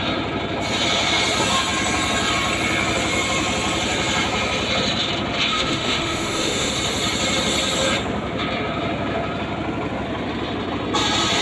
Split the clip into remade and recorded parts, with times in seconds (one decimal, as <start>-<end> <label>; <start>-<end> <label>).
0.0-5.5 recorded; 5.5-6.7 remade; 6.7-11.4 recorded